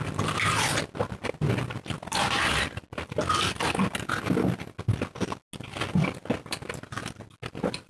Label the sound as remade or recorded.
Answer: recorded